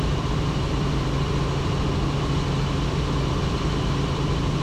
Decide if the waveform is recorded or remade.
remade